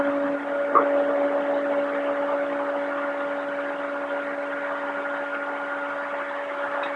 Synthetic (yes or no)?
no